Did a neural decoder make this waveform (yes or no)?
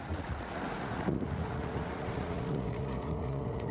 yes